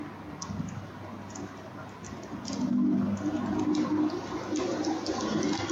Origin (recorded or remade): recorded